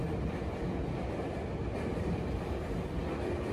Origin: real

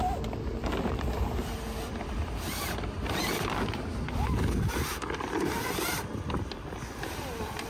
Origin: real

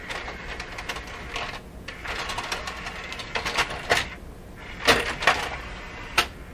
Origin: real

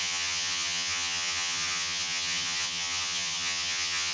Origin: fake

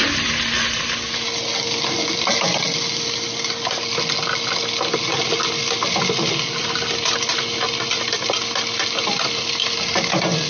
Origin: real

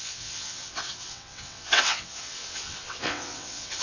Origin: fake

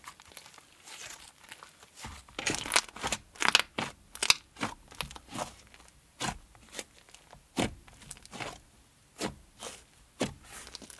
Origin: real